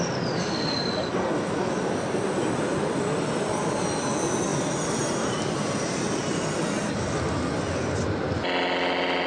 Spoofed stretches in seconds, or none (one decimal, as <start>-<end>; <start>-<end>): none